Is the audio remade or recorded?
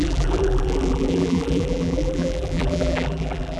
remade